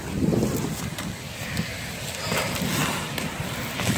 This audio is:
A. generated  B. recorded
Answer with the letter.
B